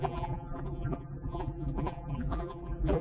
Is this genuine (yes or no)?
no